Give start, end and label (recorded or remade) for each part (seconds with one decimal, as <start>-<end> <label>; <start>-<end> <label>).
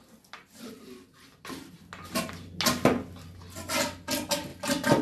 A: 0.0-5.0 recorded